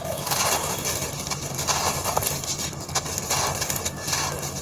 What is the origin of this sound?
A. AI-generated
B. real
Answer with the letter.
B